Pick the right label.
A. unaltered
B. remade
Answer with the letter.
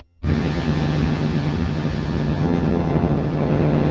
B